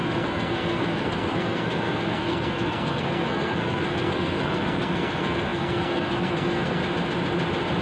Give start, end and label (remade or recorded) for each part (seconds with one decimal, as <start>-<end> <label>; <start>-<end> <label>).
0.0-6.8 remade; 6.8-7.8 recorded